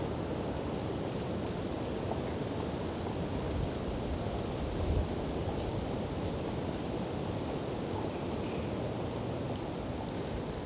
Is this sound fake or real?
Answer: real